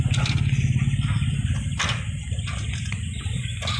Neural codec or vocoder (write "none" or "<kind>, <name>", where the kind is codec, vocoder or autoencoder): none